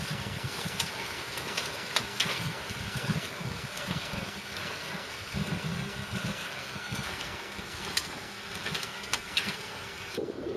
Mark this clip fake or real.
fake